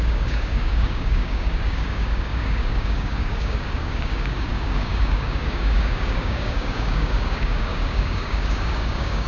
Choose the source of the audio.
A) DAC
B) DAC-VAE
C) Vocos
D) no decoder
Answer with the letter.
A